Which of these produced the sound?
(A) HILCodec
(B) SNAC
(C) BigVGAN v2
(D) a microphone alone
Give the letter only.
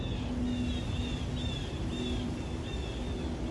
D